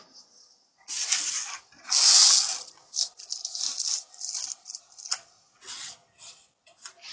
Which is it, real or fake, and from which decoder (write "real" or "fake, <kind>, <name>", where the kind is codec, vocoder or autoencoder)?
real